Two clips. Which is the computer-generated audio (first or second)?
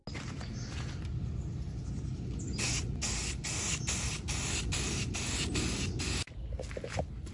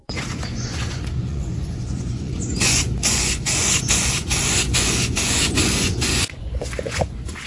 second